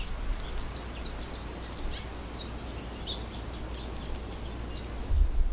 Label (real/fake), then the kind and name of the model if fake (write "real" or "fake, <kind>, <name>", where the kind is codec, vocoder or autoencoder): real